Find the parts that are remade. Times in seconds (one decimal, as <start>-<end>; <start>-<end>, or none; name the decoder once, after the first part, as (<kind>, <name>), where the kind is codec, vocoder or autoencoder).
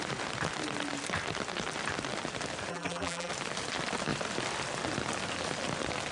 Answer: 2.7-3.3 (vocoder, BigVGAN v2)